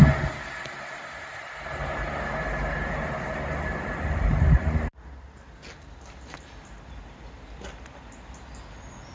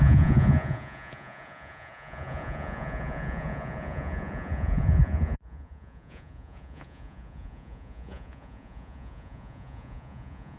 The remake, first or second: second